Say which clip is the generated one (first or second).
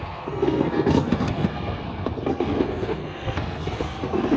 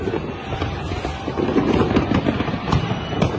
first